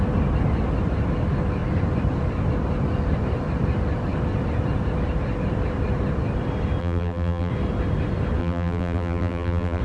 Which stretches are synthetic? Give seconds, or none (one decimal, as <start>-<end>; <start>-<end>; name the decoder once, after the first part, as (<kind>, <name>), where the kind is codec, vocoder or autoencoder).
6.8-7.5 (vocoder, BigVGAN v2); 8.4-9.8